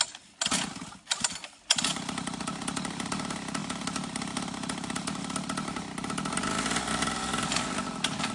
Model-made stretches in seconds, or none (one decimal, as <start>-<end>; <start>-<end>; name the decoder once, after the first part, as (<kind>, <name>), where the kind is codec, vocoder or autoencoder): none